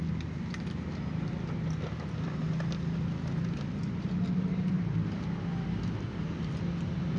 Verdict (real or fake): real